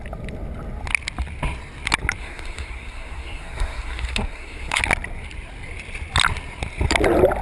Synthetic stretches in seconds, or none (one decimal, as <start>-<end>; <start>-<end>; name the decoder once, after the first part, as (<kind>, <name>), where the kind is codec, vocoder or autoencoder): 2.2-4.8 (codec, SNAC)